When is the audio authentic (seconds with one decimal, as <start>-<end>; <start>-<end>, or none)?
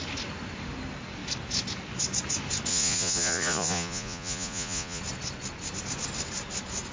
0.0-2.7; 5.0-6.9